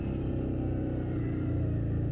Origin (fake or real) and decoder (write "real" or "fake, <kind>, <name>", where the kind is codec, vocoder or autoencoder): real